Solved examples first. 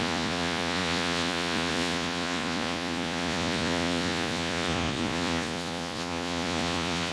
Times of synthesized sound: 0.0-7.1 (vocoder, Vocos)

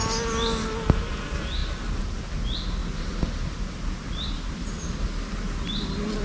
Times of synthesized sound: 2.8-3.4 (vocoder, BigVGAN v2)

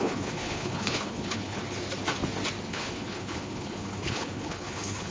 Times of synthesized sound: 0.0-1.6 (codec, HILCodec); 2.7-5.1

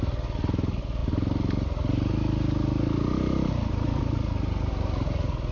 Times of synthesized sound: none